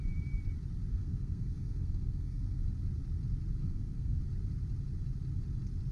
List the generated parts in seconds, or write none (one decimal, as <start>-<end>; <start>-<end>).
0.9-2.6; 3.6-4.2